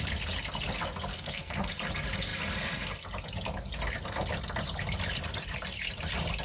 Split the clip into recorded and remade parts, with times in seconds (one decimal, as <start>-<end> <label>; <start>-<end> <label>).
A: 0.0-1.1 recorded; 1.1-1.7 remade; 1.7-6.4 recorded